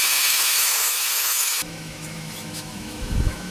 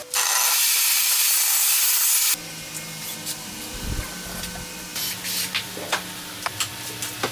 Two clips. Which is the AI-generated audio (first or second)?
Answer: first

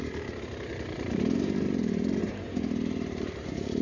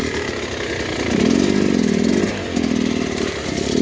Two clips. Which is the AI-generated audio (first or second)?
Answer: first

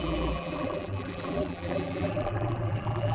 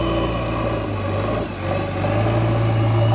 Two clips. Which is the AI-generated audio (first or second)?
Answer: first